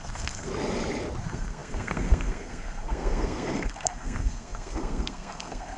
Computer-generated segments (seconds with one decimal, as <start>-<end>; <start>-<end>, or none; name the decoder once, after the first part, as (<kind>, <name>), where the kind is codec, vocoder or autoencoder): 0.0-0.5 (codec, SNAC); 1.2-5.8